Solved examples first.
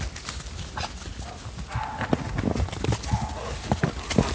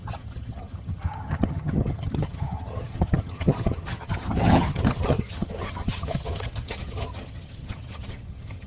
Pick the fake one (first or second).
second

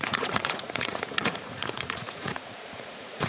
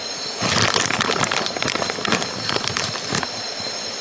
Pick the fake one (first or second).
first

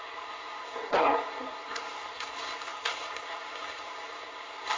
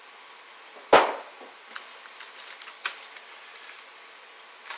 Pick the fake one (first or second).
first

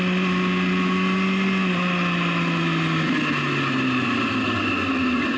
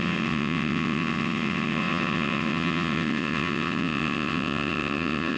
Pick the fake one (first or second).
second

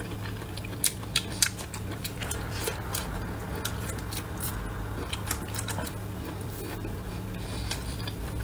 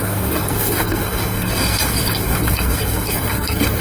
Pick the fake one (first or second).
second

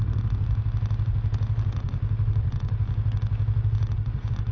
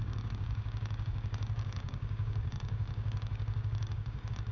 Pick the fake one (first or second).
second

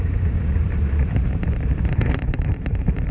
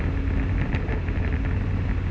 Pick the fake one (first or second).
first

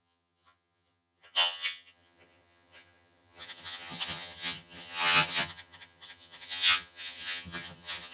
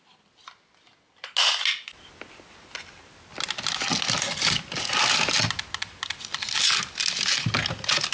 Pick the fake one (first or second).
first